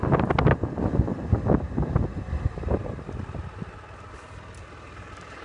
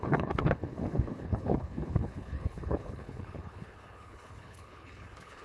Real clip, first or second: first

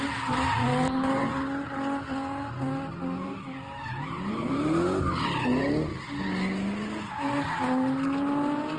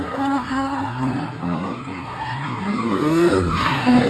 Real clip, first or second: first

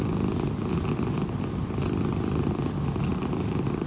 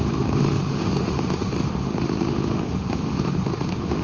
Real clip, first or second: first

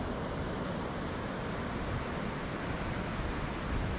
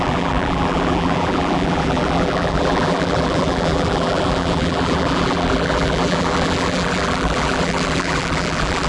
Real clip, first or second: first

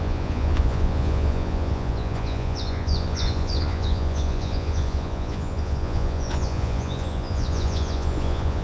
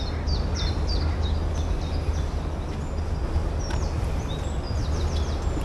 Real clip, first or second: second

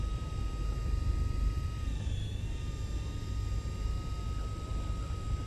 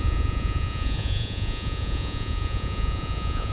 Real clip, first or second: first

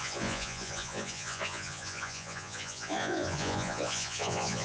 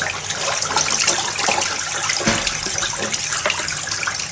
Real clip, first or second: second